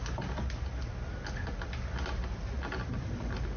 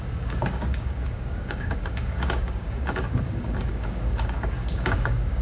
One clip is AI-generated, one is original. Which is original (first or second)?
first